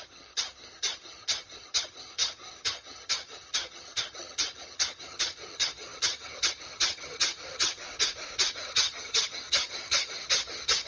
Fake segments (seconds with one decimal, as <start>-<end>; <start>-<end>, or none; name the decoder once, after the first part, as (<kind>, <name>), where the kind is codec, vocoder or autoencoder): 0.0-7.8 (vocoder, HiFi-GAN); 8.5-10.9